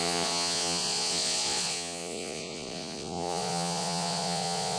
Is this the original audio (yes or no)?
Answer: no